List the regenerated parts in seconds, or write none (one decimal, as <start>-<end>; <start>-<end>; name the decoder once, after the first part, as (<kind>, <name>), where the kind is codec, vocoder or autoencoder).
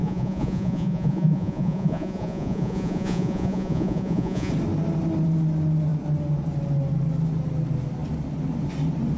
0.0-4.5 (vocoder, Vocos)